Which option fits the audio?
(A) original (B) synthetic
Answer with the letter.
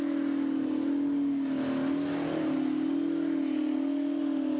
A